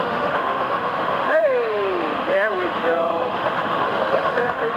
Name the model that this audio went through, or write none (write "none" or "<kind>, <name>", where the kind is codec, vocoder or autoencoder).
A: autoencoder, DAC-VAE